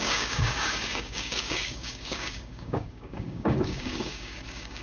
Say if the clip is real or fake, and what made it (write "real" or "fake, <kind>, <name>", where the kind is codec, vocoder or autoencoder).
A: fake, codec, DAC